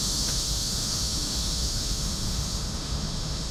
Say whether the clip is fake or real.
fake